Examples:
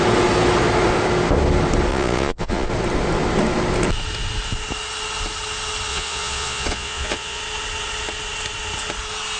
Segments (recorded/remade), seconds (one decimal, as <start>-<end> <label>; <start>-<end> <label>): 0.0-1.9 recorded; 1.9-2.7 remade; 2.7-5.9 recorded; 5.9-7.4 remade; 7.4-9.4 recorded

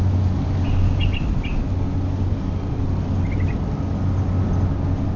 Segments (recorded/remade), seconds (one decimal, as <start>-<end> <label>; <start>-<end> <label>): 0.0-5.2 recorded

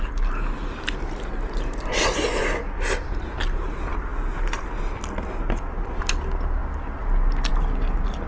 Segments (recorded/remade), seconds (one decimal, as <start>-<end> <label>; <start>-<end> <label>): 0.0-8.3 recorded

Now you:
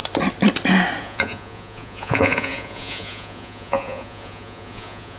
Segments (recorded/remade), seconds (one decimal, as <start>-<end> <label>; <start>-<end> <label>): 0.0-1.0 recorded; 1.0-5.2 remade

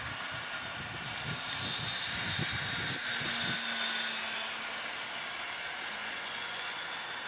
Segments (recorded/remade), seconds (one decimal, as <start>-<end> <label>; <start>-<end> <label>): 0.0-6.0 recorded; 6.0-6.8 remade; 6.8-7.3 recorded

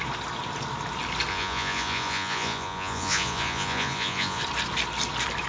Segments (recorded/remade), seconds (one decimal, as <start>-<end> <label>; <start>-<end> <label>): 0.0-1.3 recorded; 1.3-4.4 remade; 4.4-5.5 recorded

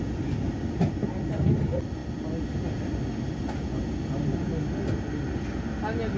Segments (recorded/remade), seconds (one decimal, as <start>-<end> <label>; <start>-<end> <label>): 0.0-6.2 recorded

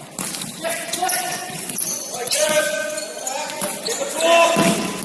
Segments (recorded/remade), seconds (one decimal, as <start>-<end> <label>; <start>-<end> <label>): 0.0-1.0 recorded; 1.0-4.0 remade; 4.0-5.0 recorded